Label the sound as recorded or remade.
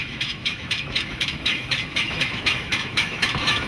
remade